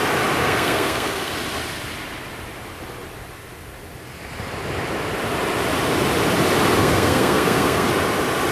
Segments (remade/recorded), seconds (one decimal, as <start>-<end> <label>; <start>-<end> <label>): 0.0-0.4 recorded; 0.4-1.3 remade; 1.3-6.8 recorded; 6.8-7.9 remade; 7.9-8.5 recorded

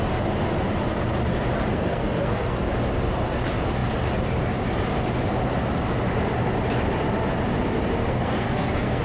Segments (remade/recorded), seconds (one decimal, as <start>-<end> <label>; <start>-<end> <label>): 0.0-1.7 recorded; 1.7-2.6 remade; 2.6-8.0 recorded; 8.0-9.0 remade

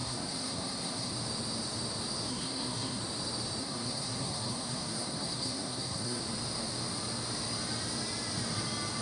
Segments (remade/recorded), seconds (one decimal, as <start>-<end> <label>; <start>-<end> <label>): 0.0-1.1 remade; 1.1-2.3 recorded; 2.3-3.0 remade; 3.0-3.6 recorded; 3.6-6.2 remade; 6.2-9.0 recorded

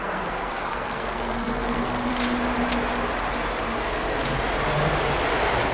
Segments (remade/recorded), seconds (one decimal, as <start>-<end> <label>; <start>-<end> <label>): 0.0-2.1 remade; 2.1-5.7 recorded

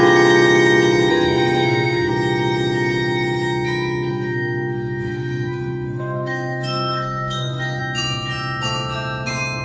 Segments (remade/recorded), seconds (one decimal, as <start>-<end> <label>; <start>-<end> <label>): 0.0-1.1 recorded; 1.1-2.1 remade; 2.1-4.1 recorded; 4.1-7.8 remade; 7.8-9.6 recorded

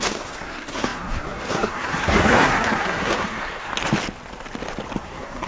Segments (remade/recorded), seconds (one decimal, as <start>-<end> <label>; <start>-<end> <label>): 0.0-3.7 remade; 3.7-5.0 recorded; 5.0-5.5 remade